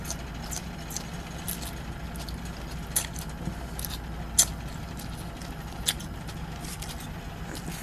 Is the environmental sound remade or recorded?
recorded